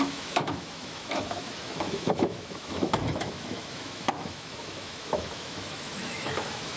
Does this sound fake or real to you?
fake